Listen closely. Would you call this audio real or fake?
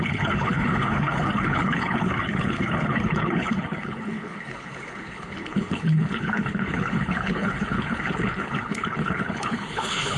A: fake